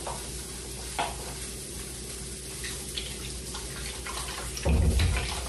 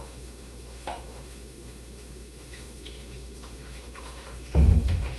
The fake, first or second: second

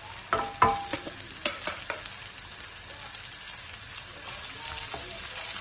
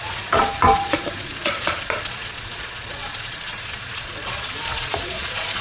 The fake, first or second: second